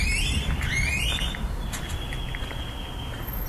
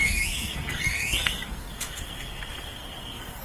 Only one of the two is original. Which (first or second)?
first